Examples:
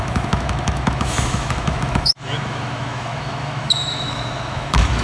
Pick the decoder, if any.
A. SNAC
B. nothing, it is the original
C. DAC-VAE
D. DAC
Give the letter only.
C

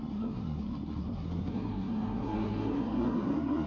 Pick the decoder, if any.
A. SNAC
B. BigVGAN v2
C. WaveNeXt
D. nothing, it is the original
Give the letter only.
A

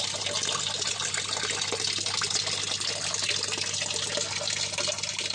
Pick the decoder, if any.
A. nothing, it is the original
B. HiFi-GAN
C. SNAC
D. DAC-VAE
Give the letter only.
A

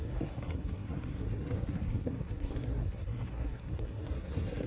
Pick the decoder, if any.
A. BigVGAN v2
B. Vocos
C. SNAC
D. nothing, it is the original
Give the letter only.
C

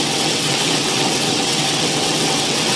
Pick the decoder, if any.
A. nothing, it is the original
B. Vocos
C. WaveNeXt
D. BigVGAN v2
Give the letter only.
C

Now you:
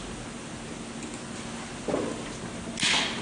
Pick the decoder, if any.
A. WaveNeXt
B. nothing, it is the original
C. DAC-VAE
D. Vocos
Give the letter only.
B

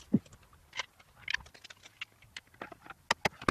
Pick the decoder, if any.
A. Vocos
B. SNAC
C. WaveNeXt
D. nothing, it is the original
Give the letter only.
D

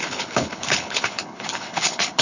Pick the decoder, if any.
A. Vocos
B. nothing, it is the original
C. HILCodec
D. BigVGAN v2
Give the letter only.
C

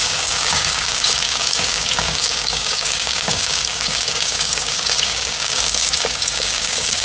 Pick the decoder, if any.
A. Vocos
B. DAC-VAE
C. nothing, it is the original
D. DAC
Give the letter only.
D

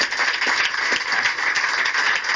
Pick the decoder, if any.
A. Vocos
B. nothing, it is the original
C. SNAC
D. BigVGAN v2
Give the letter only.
B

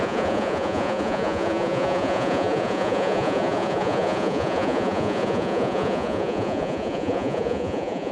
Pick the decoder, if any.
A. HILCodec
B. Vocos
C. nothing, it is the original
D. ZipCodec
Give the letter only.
B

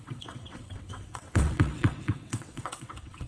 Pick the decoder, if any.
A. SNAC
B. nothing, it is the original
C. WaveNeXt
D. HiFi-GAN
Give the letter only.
C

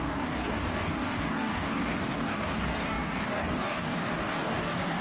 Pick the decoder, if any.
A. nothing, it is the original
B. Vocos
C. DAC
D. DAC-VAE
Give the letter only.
C